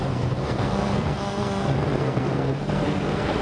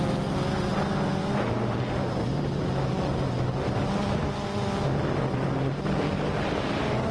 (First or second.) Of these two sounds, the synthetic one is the first